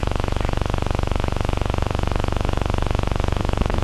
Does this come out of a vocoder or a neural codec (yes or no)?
yes